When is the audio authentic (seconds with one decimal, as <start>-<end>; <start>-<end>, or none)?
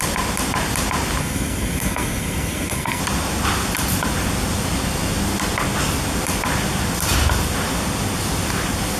0.0-1.2; 3.0-9.0